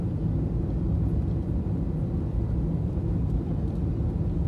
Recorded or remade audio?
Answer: recorded